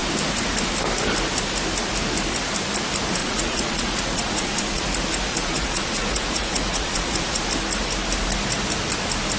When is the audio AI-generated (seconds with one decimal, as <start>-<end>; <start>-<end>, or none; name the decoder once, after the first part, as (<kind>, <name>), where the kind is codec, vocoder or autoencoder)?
3.2-4.8 (vocoder, Vocos); 5.3-7.4